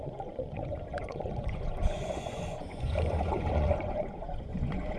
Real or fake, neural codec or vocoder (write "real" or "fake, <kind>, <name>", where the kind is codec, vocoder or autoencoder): fake, vocoder, Vocos